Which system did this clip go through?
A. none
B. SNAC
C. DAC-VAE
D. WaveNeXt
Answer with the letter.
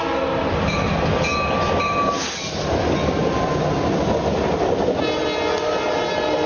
A